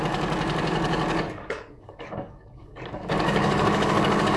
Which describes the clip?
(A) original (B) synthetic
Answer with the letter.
B